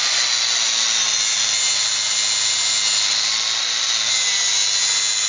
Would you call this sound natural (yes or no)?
yes